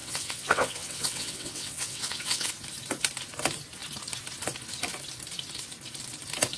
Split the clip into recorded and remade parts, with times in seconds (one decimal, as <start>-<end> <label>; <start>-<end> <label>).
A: 0.0-2.5 remade; 2.5-6.6 recorded